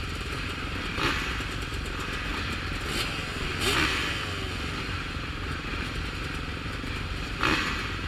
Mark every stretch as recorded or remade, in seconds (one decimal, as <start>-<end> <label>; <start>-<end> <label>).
0.0-2.3 remade; 2.3-3.0 recorded; 3.0-3.5 remade; 3.5-4.8 recorded; 4.8-8.1 remade